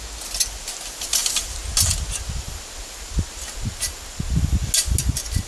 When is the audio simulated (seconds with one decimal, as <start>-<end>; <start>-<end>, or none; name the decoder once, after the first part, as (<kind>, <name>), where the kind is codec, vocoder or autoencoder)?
none